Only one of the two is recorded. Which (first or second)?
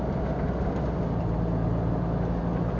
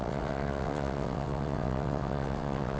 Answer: first